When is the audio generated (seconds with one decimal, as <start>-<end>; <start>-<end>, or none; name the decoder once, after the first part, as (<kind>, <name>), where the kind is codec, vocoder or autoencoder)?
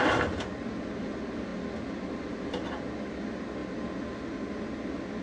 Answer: none